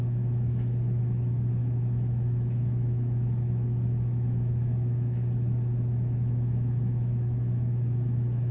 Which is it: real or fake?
fake